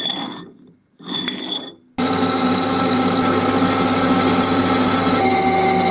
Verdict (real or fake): real